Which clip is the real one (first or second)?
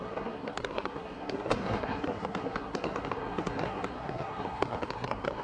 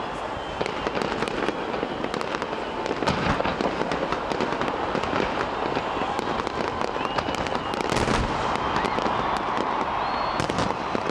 second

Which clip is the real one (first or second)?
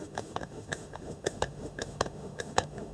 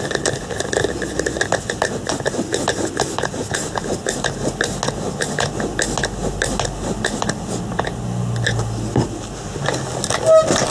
second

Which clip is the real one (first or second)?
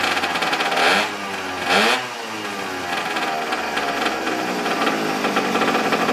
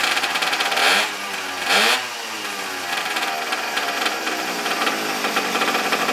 first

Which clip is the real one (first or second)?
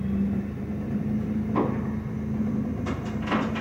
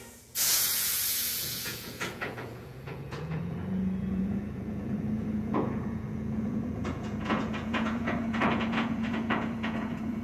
first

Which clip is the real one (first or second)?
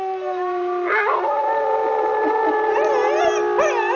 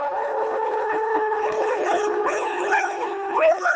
first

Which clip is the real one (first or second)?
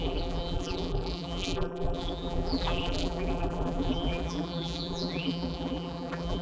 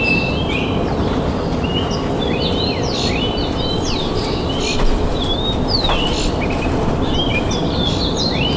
second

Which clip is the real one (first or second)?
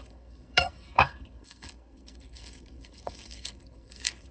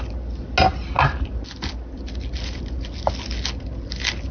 second